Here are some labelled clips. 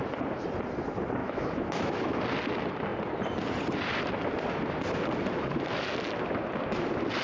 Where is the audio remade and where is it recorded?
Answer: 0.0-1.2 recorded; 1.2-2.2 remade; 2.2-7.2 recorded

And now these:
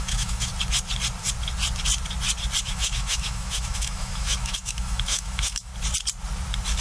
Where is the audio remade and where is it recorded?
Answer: 0.0-0.5 remade; 0.5-2.6 recorded; 2.6-5.7 remade; 5.7-6.8 recorded

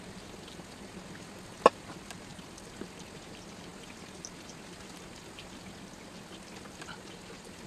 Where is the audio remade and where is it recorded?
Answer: 0.0-7.7 recorded

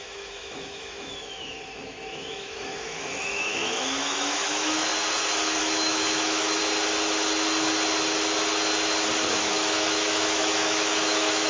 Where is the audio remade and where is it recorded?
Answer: 0.0-4.9 remade; 4.9-5.6 recorded; 5.6-6.6 remade; 6.6-9.4 recorded; 9.4-11.5 remade

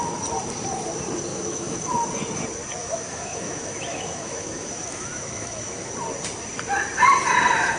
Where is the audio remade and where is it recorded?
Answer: 0.0-1.3 recorded; 1.3-1.8 remade; 1.8-2.8 recorded; 2.8-5.9 remade; 5.9-7.8 recorded